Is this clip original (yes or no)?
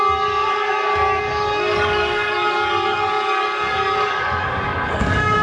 no